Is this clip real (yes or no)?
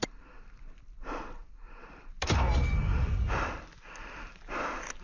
yes